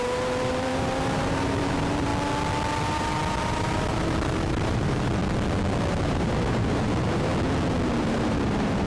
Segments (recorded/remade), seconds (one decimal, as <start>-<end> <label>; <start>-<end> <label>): 0.0-2.1 remade; 2.1-2.8 recorded; 2.8-5.2 remade; 5.2-5.9 recorded; 5.9-7.3 remade; 7.3-8.0 recorded; 8.0-8.9 remade

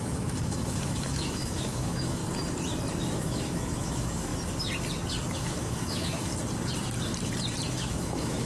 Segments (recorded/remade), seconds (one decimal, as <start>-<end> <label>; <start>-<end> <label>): 0.0-2.2 remade; 2.2-2.9 recorded; 2.9-4.3 remade; 4.3-5.4 recorded; 5.4-6.3 remade; 6.3-7.7 recorded; 7.7-8.5 remade

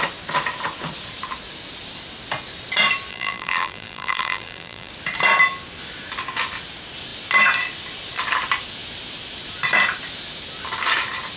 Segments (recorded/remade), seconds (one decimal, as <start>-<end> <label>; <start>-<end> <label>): 0.0-3.1 recorded; 3.1-4.9 remade; 4.9-11.4 recorded